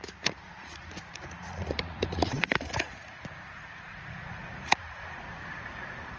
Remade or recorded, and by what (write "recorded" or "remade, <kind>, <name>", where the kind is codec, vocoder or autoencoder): remade, vocoder, Vocos